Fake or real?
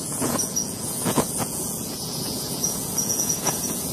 fake